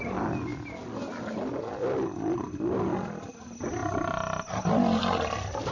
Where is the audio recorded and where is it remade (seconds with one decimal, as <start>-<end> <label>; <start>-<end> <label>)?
0.0-5.7 recorded